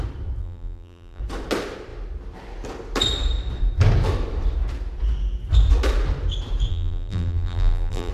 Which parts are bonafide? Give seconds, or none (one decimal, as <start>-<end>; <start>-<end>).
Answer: 0.0-0.4; 1.2-6.7